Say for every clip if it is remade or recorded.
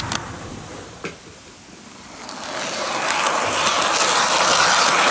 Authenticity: recorded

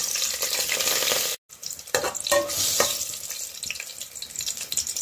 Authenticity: recorded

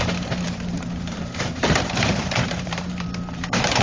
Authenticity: remade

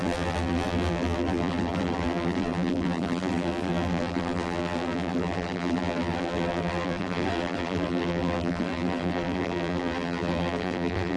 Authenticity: remade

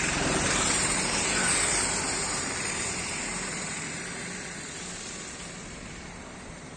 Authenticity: remade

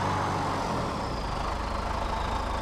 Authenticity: recorded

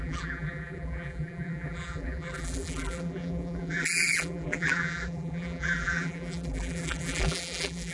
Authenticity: remade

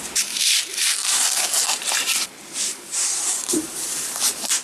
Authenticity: remade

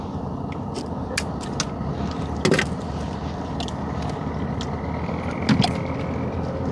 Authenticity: recorded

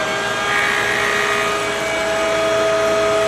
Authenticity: recorded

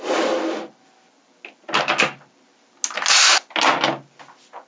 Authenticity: recorded